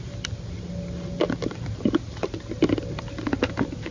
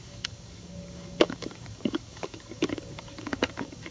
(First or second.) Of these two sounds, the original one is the first